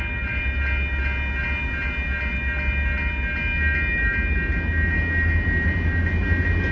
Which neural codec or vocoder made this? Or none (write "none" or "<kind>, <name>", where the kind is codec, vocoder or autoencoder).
none